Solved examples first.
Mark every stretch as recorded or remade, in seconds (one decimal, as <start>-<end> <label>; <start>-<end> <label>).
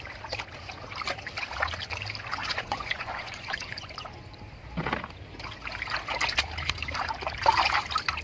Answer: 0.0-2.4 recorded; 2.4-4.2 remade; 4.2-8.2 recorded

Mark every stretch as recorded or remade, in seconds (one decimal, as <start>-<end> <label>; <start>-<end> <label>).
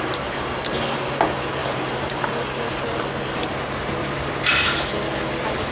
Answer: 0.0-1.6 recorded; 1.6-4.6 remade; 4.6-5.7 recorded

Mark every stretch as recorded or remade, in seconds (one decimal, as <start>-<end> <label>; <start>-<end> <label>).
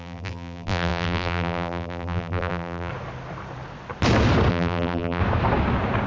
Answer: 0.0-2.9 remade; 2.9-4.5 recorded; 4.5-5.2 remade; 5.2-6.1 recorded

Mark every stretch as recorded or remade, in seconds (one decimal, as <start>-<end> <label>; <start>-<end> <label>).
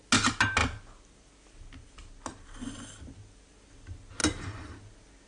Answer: 0.0-5.3 recorded